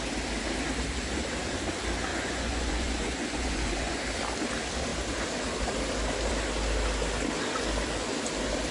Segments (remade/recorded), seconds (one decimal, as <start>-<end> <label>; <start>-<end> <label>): 0.0-2.1 recorded; 2.1-4.0 remade; 4.0-8.7 recorded